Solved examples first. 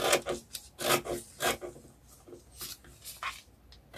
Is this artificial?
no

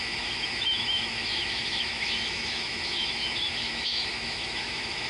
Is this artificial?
yes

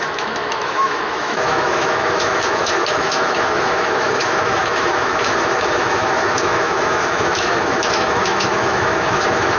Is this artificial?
yes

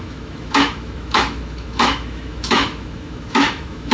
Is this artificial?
yes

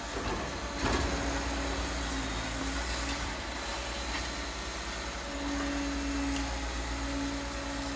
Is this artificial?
no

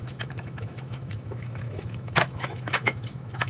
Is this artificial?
yes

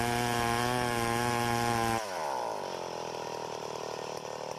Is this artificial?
no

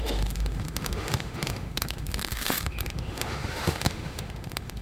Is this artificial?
yes